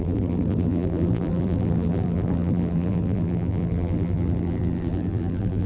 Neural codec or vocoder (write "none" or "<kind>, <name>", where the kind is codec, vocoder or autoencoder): vocoder, BigVGAN v2